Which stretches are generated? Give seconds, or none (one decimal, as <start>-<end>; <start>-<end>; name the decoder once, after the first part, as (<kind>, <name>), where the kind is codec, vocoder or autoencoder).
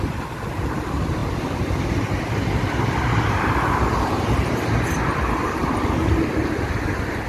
1.2-4.4 (vocoder, BigVGAN v2)